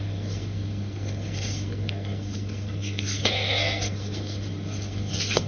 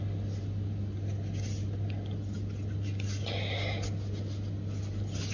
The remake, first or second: first